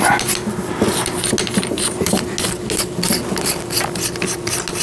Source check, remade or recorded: recorded